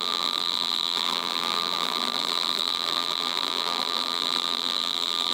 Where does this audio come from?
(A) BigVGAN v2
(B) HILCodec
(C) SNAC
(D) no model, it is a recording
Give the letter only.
A